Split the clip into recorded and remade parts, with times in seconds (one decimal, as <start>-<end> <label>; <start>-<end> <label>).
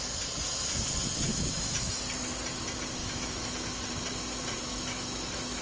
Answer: 0.0-1.3 recorded; 1.3-2.0 remade; 2.0-3.0 recorded; 3.0-3.8 remade; 3.8-4.7 recorded; 4.7-5.6 remade